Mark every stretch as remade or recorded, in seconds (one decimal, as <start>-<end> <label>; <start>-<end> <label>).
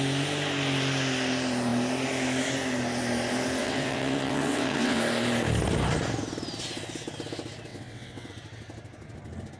0.0-3.6 recorded; 3.6-5.0 remade; 5.0-7.7 recorded; 7.7-8.3 remade; 8.3-9.6 recorded